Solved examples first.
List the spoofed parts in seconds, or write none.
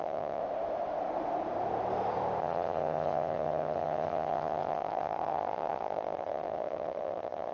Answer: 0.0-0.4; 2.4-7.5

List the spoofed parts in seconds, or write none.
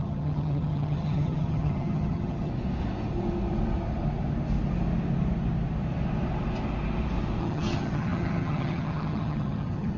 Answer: 0.0-2.5; 7.4-10.0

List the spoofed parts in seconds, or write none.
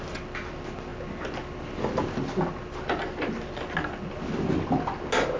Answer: none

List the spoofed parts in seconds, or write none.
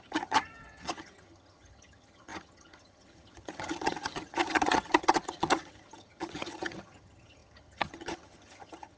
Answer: 0.0-9.0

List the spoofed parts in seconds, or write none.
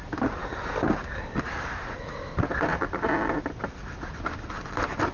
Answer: none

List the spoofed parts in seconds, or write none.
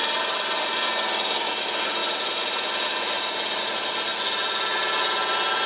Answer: none